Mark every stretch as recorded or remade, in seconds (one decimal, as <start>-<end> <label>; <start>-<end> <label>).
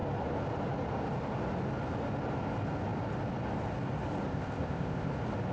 0.0-4.3 recorded; 4.3-5.1 remade; 5.1-5.5 recorded